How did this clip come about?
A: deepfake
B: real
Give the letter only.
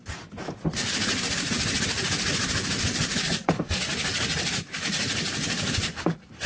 B